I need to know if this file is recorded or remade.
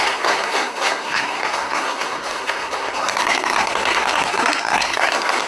remade